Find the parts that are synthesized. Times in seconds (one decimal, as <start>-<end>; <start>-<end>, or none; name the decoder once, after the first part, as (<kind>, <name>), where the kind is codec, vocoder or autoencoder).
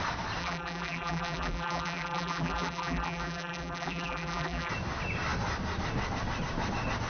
0.4-4.7 (vocoder, BigVGAN v2)